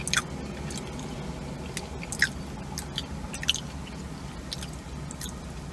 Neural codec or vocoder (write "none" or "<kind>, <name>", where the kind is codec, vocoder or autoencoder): none